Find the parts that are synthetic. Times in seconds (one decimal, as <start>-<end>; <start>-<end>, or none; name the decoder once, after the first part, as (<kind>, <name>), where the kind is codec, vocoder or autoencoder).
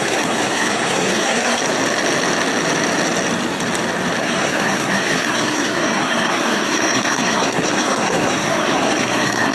0.0-1.6 (codec, SNAC); 4.2-9.5